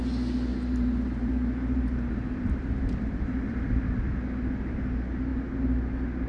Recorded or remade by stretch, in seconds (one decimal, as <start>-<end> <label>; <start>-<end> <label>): 0.0-0.5 recorded; 0.5-4.1 remade; 4.1-6.3 recorded